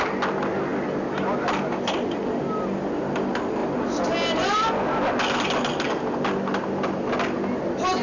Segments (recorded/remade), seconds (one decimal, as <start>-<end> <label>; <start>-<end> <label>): 0.0-8.0 recorded